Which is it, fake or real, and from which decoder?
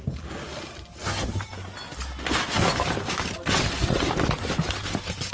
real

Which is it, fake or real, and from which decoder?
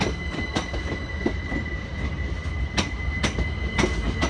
real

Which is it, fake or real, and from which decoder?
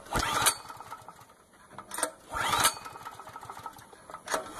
real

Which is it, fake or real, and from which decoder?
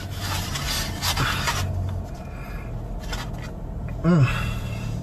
real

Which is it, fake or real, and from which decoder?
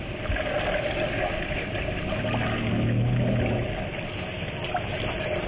real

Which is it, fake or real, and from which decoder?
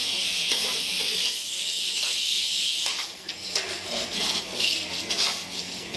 fake, codec, SNAC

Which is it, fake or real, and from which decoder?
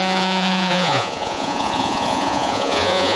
fake, vocoder, Vocos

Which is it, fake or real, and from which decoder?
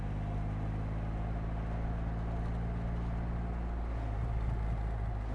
real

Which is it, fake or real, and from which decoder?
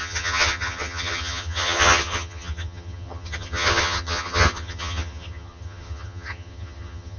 fake, vocoder, HiFi-GAN